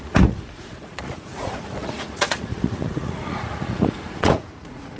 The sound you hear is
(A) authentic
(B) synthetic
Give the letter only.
B